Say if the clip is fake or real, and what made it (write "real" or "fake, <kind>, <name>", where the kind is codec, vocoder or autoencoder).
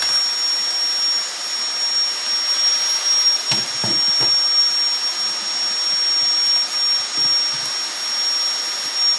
real